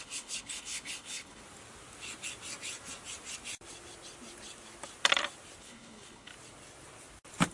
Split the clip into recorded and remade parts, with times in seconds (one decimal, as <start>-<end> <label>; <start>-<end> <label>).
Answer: 0.0-1.4 remade; 1.4-5.6 recorded; 5.6-6.3 remade; 6.3-7.5 recorded